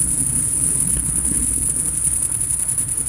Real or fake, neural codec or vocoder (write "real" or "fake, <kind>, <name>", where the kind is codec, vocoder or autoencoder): fake, codec, HILCodec